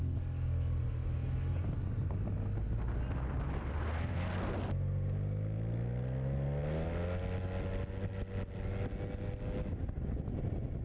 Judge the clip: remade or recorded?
recorded